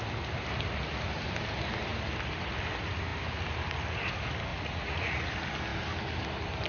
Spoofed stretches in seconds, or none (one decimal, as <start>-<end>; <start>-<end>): 4.5-5.3